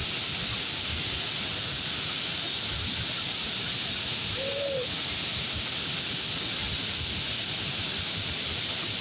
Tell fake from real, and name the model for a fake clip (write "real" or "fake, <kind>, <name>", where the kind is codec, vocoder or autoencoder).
real